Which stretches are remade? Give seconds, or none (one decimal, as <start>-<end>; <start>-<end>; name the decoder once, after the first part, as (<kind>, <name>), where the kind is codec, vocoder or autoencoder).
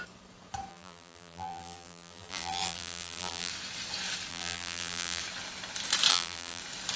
0.7-3.5 (vocoder, BigVGAN v2); 4.3-5.2; 6.1-6.6